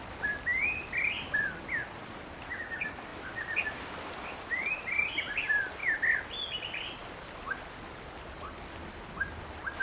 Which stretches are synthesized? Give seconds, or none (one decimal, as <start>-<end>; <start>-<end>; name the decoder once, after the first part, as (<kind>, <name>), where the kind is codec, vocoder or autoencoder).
3.1-3.9 (vocoder, BigVGAN v2)